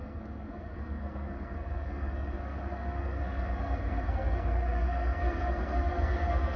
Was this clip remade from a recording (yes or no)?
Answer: yes